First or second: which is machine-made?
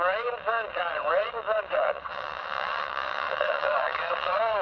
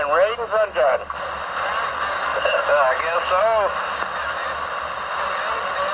first